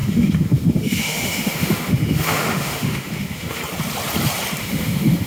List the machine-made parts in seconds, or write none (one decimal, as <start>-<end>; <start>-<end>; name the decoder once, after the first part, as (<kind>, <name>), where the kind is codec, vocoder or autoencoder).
0.0-3.6 (autoencoder, DAC-VAE); 4.6-5.3